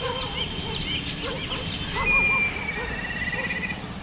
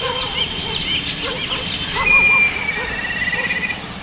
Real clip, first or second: first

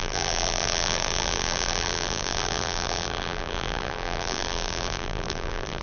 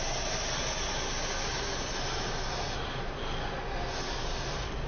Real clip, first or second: second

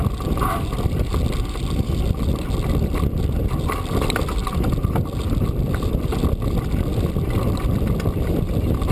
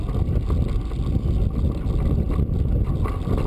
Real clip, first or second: second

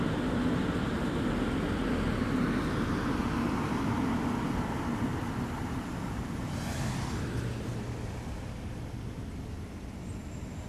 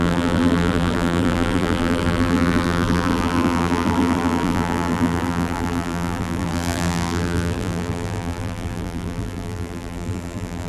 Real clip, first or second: first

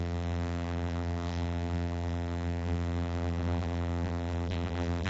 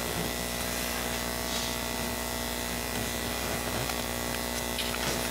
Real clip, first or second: second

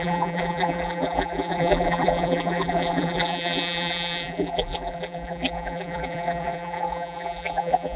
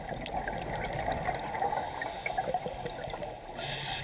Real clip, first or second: second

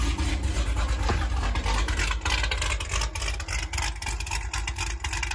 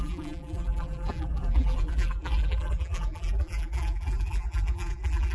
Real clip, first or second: first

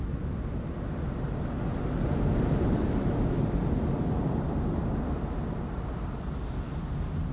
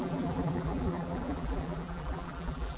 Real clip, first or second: first